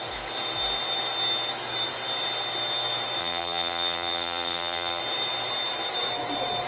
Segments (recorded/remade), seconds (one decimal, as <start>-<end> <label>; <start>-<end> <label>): 0.0-3.2 recorded; 3.2-5.0 remade; 5.0-6.7 recorded